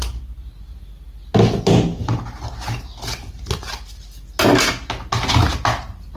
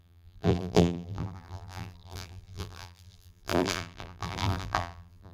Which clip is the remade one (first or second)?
second